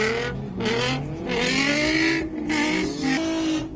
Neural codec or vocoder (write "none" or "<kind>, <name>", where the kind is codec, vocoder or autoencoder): none